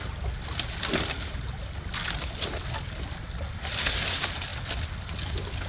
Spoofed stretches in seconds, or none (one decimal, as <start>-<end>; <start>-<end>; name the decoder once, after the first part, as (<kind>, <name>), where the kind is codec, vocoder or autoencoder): none